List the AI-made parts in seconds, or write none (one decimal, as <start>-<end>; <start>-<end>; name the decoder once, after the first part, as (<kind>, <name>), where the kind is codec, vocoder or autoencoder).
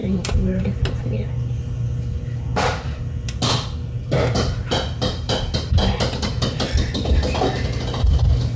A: 0.0-0.6 (vocoder, BigVGAN v2)